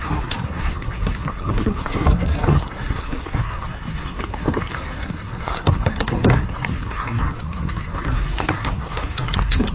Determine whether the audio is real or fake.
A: fake